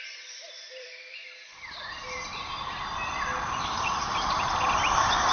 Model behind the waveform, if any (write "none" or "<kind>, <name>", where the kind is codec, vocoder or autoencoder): vocoder, BigVGAN v2